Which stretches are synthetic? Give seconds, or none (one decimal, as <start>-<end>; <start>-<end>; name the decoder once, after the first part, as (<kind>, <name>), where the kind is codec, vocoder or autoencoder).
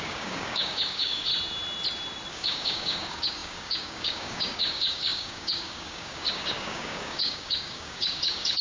0.0-1.3 (codec, DAC); 2.3-8.6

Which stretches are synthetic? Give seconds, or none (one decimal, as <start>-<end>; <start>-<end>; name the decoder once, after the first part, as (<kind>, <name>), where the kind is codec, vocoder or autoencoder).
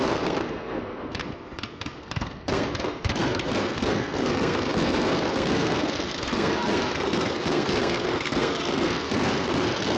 0.0-10.0 (codec, SNAC)